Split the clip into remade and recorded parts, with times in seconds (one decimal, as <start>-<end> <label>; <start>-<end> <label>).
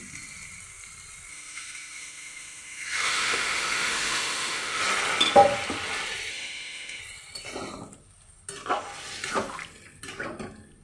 0.0-1.3 recorded; 1.3-4.8 remade; 4.8-6.3 recorded; 6.3-7.0 remade; 7.0-10.8 recorded